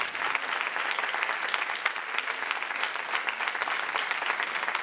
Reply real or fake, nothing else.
real